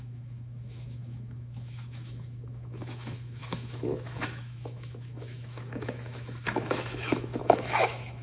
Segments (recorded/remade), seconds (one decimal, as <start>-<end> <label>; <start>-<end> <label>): 0.0-8.2 remade